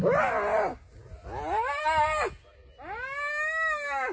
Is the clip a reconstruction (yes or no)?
no